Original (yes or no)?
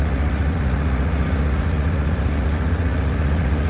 no